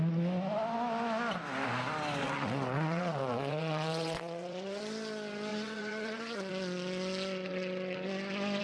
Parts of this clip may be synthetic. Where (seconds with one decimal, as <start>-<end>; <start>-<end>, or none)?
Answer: 2.2-4.8; 5.5-6.5